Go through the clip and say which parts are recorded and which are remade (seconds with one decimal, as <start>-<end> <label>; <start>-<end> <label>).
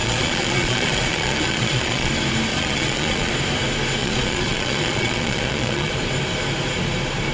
0.0-2.1 remade; 2.1-2.5 recorded; 2.5-3.3 remade; 3.3-4.0 recorded; 4.0-5.9 remade; 5.9-7.3 recorded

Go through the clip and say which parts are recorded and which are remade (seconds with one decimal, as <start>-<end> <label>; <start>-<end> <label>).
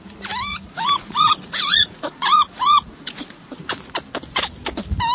0.0-0.5 recorded; 0.5-3.6 remade; 3.6-5.1 recorded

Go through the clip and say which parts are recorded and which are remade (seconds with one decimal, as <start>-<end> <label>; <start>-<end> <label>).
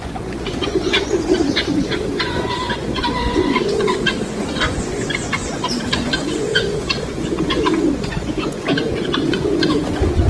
0.0-10.3 remade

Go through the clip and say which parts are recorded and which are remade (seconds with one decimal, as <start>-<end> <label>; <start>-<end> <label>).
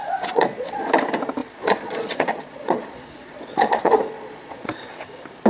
0.0-0.9 remade; 0.9-1.4 recorded; 1.4-4.7 remade; 4.7-5.5 recorded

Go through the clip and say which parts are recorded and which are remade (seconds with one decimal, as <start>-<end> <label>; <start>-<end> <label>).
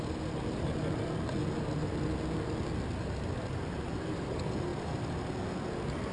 0.0-6.1 recorded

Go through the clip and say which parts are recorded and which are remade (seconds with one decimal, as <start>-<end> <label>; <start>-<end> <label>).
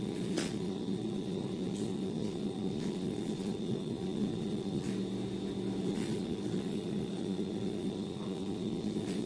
0.0-4.9 remade; 4.9-5.8 recorded; 5.8-9.3 remade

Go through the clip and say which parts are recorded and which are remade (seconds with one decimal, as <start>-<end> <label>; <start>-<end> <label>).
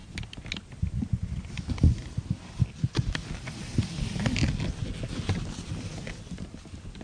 0.0-7.0 recorded